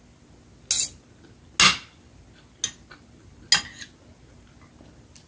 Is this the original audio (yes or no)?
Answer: yes